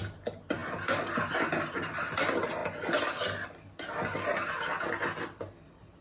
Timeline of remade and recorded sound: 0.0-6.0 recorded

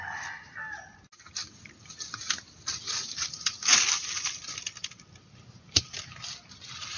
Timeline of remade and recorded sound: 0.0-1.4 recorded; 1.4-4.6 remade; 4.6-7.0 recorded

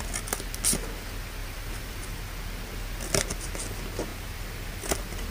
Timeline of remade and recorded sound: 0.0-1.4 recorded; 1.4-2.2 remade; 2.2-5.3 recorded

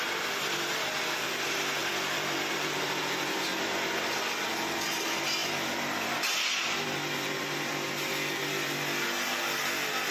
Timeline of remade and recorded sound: 0.0-1.8 recorded; 1.8-3.0 remade; 3.0-3.5 recorded; 3.5-4.5 remade; 4.5-5.4 recorded; 5.4-7.3 remade; 7.3-10.1 recorded

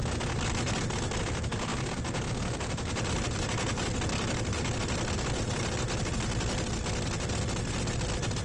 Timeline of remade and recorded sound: 0.0-8.4 recorded

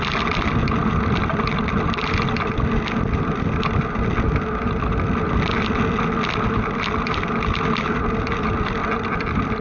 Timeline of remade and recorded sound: 0.0-0.9 recorded; 0.9-3.5 remade; 3.5-8.8 recorded; 8.8-9.6 remade

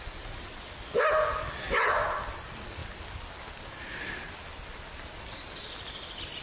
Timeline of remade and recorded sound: 0.0-6.4 recorded

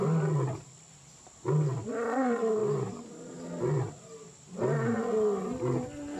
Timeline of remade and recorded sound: 0.0-6.2 recorded